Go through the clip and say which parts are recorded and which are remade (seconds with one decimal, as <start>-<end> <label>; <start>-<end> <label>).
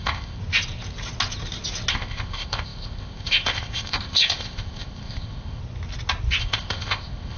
0.0-0.4 remade; 0.4-1.9 recorded; 1.9-5.6 remade; 5.6-6.4 recorded; 6.4-7.4 remade